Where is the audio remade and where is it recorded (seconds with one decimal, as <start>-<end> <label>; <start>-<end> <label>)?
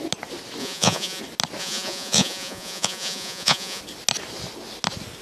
0.0-0.6 recorded; 0.6-1.2 remade; 1.2-1.6 recorded; 1.6-3.8 remade; 3.8-5.2 recorded